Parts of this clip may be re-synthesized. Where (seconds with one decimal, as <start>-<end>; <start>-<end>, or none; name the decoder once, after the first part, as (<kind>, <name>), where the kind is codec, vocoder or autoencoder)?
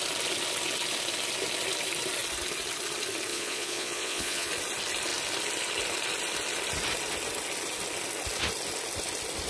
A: 3.3-4.5 (vocoder, Vocos)